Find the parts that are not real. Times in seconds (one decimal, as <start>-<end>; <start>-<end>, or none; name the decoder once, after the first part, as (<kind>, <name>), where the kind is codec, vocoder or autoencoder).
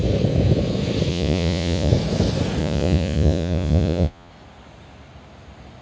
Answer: 1.1-1.9 (vocoder, Vocos); 2.6-4.3